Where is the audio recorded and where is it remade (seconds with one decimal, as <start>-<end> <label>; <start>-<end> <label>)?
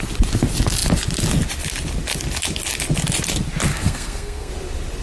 0.0-3.7 recorded; 3.7-4.5 remade; 4.5-5.0 recorded